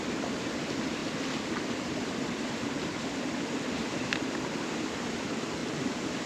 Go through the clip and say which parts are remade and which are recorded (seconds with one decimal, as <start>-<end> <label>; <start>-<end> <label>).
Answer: 0.0-1.0 remade; 1.0-4.8 recorded; 4.8-5.6 remade; 5.6-6.3 recorded